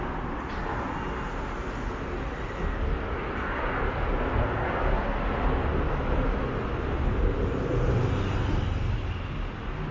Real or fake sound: real